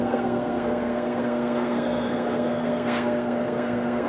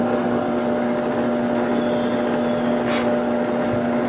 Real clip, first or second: second